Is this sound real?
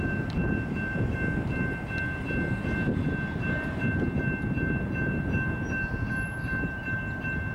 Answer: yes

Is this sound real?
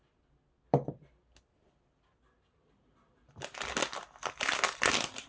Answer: yes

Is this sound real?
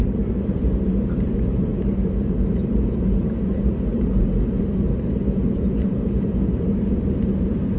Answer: no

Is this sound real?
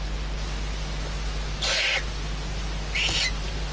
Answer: yes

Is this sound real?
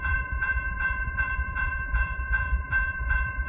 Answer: no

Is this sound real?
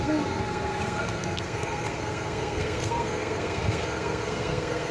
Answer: no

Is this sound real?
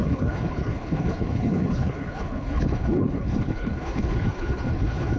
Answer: no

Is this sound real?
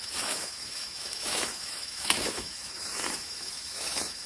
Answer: no